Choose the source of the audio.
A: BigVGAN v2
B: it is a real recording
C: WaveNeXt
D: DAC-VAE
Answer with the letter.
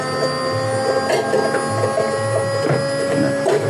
B